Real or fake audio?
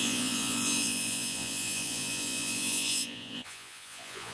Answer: fake